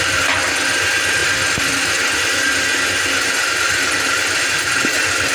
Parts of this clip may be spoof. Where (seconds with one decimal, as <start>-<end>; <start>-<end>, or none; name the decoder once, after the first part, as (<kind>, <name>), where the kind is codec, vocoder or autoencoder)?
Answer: none